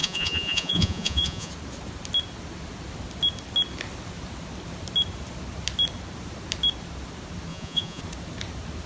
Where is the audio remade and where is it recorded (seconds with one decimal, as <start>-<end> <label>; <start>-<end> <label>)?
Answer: 0.0-1.5 remade; 1.5-7.5 recorded; 7.5-8.0 remade; 8.0-8.9 recorded